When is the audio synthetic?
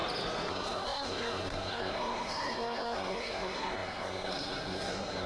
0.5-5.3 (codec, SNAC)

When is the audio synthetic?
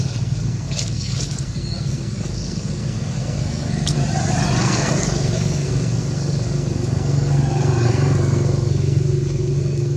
0.0-4.0 (codec, SNAC); 4.6-10.0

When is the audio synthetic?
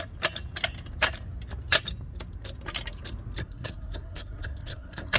3.4-5.2 (codec, SNAC)